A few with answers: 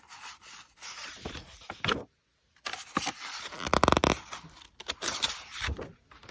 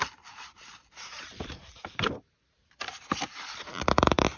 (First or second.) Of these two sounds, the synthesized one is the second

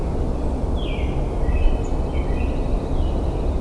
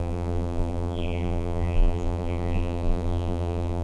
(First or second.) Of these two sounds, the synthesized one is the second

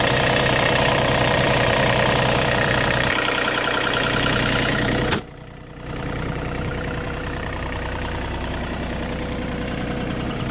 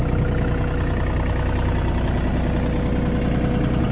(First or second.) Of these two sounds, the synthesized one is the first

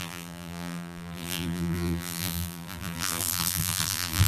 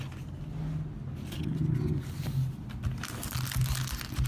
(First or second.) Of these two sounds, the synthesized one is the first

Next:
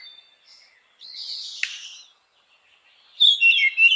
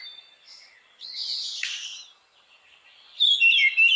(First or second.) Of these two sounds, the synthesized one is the second